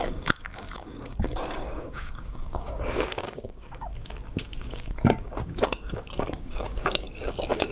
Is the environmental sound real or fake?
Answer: fake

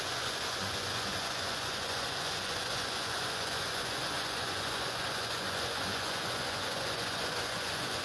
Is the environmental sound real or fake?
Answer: fake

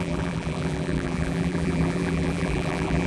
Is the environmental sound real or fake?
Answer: fake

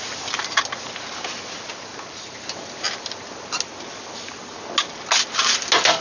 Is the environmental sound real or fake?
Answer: real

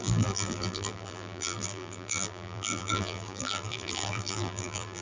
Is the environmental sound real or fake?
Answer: fake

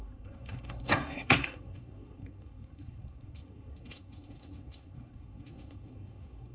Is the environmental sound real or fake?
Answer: fake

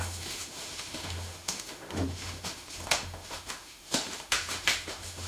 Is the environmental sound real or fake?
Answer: fake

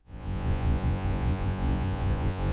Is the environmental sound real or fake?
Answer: fake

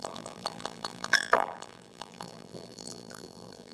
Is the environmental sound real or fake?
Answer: fake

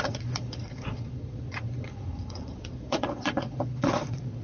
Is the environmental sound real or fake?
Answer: fake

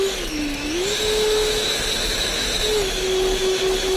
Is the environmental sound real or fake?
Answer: fake